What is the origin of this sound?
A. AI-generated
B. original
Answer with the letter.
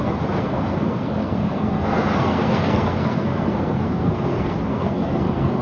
A